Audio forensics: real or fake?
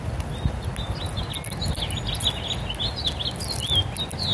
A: real